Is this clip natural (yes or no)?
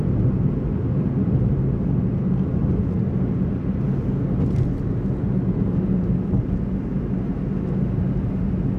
yes